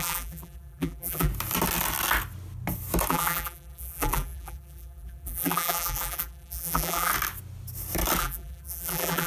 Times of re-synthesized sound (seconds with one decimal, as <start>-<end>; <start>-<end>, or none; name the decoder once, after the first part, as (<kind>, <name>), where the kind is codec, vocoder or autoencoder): 0.0-1.3 (vocoder, BigVGAN v2); 3.1-7.1; 8.2-9.3